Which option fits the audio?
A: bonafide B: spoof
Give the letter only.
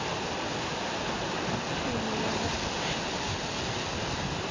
A